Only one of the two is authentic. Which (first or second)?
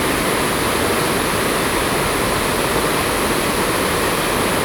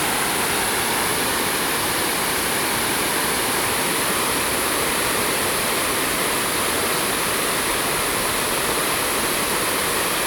first